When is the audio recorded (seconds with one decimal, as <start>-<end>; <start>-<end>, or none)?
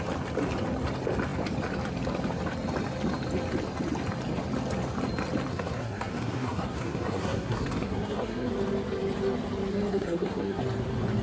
0.0-5.5; 8.5-9.7; 10.6-11.2